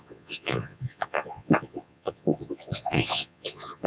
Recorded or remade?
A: remade